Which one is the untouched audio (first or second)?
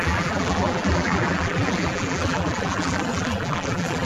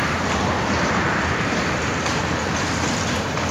second